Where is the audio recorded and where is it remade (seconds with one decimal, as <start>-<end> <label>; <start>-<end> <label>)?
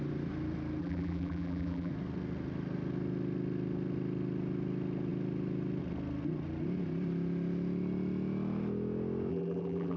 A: 0.0-0.8 recorded; 0.8-1.9 remade; 1.9-9.3 recorded; 9.3-10.0 remade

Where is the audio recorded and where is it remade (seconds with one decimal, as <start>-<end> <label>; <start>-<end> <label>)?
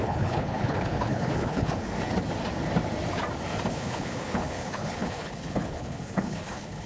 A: 0.0-1.9 remade; 1.9-3.7 recorded; 3.7-6.9 remade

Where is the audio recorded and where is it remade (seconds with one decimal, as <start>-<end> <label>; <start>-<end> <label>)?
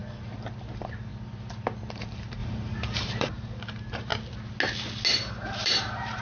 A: 0.0-0.7 recorded; 0.7-1.1 remade; 1.1-1.9 recorded; 1.9-4.1 remade; 4.1-5.3 recorded; 5.3-6.2 remade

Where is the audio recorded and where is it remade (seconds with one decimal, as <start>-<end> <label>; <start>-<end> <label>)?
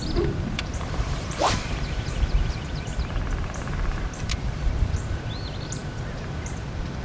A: 0.0-7.0 remade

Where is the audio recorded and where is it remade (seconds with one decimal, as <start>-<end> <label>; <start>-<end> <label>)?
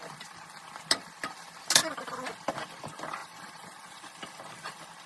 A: 0.0-3.2 recorded; 3.2-4.2 remade; 4.2-5.1 recorded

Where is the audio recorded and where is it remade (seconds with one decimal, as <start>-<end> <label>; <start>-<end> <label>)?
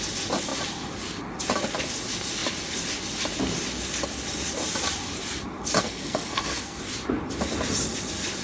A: 0.0-5.8 recorded; 5.8-6.8 remade; 6.8-8.4 recorded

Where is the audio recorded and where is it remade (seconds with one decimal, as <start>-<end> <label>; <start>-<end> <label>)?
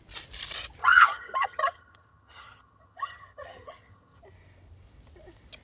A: 0.0-0.8 recorded; 0.8-4.2 remade; 4.2-5.6 recorded